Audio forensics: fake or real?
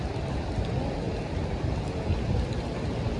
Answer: real